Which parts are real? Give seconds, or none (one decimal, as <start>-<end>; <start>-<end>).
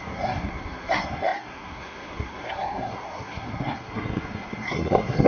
none